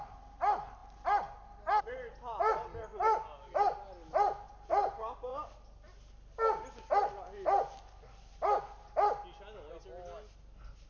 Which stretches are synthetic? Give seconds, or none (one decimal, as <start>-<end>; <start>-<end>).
none